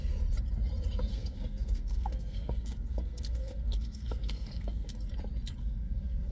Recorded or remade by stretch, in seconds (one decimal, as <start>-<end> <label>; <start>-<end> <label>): 0.0-1.1 recorded; 1.1-4.9 remade; 4.9-5.6 recorded; 5.6-6.3 remade